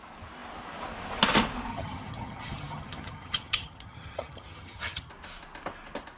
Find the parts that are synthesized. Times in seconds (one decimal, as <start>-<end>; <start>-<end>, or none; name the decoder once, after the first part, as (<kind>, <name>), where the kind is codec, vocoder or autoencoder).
1.7-5.1 (vocoder, HiFi-GAN)